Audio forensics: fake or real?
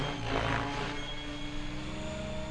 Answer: real